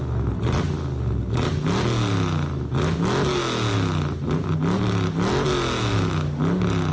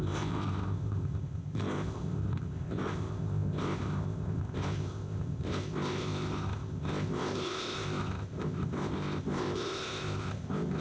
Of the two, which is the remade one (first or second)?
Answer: second